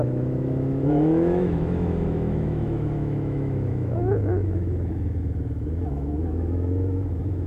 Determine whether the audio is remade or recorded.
remade